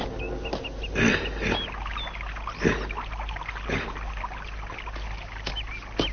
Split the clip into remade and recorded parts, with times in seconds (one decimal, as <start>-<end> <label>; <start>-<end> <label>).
0.0-0.5 recorded; 0.5-4.2 remade; 4.2-6.1 recorded